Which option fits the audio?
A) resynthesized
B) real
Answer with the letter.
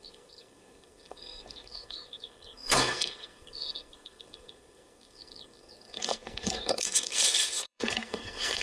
A